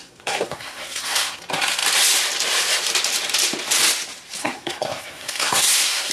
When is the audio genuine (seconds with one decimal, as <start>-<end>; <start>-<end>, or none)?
1.4-4.4